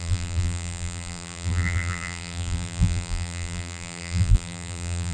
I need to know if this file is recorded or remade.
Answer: remade